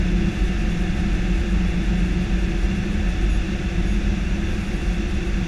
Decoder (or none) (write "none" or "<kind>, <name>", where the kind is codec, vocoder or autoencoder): none